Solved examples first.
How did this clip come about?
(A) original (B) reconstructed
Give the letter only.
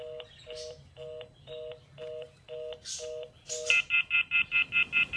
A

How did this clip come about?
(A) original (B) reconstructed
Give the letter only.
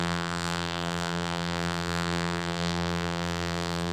B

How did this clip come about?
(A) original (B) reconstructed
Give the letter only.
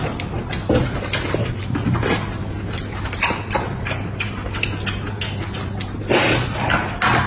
A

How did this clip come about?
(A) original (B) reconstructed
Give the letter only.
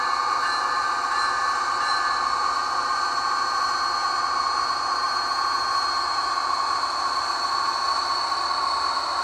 B